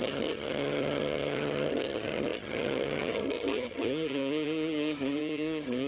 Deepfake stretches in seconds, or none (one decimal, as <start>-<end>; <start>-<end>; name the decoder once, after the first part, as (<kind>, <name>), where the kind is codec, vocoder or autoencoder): 0.0-5.9 (vocoder, HiFi-GAN)